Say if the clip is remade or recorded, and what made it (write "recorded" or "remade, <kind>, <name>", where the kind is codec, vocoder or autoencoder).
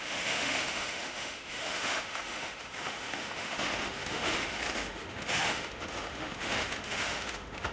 remade, autoencoder, DAC-VAE